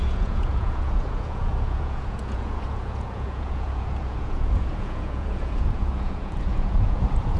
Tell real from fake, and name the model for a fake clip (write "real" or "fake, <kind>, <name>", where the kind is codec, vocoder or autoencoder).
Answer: fake, vocoder, Vocos